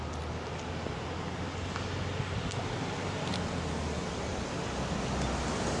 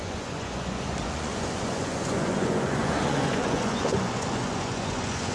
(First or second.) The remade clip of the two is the second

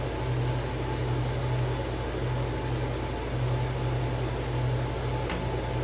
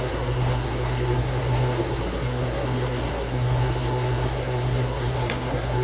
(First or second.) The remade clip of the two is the second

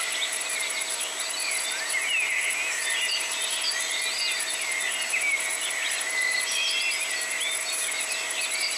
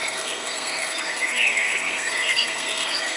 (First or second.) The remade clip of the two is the second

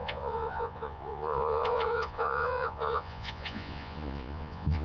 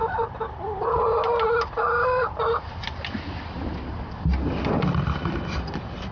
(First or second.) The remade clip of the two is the first